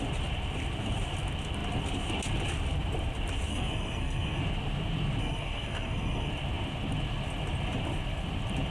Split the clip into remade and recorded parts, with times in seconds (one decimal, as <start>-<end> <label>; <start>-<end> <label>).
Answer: 0.0-3.5 recorded; 3.5-4.4 remade; 4.4-5.2 recorded; 5.2-6.3 remade; 6.3-8.7 recorded